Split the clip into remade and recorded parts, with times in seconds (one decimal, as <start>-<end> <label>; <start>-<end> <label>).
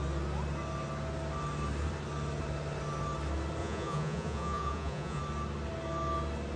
0.0-3.6 recorded; 3.6-5.2 remade; 5.2-6.6 recorded